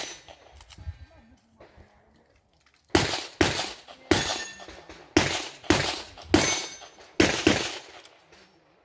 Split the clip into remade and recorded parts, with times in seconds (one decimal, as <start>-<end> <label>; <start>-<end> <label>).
0.0-8.8 recorded